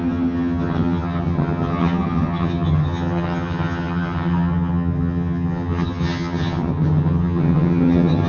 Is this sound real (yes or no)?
no